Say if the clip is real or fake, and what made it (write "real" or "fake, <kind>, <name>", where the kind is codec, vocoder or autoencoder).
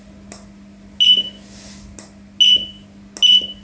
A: real